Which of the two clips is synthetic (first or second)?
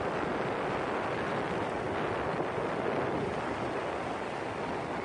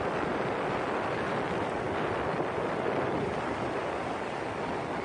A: second